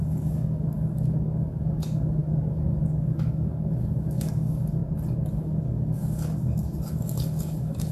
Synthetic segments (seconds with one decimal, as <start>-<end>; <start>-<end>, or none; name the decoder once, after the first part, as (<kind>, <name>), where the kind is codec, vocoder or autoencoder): 0.0-4.8 (codec, DAC); 5.3-7.9